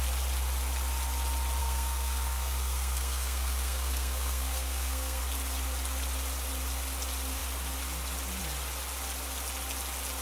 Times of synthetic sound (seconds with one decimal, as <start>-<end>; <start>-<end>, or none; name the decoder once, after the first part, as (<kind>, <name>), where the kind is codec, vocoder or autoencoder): 1.6-5.2 (codec, SNAC)